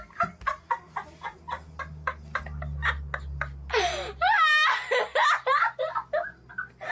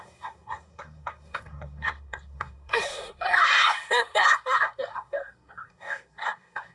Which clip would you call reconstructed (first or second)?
second